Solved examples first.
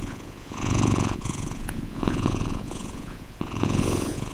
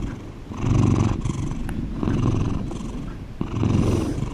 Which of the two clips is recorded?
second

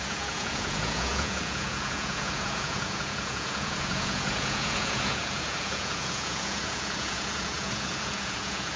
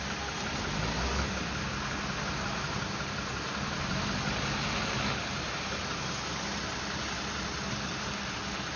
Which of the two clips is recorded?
second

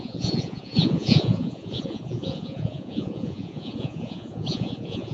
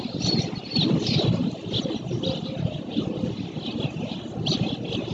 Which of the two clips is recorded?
second